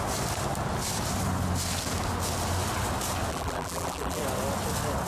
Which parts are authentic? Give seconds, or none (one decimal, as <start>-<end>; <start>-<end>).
0.0-3.3; 4.2-5.1